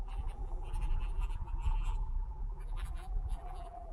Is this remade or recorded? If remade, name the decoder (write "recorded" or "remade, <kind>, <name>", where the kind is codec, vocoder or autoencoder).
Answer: remade, vocoder, BigVGAN v2